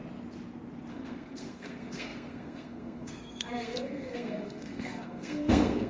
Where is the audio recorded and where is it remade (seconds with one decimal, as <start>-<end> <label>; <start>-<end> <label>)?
0.0-0.9 recorded; 0.9-5.9 remade